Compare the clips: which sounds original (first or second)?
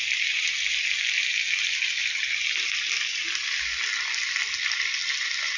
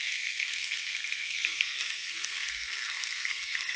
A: first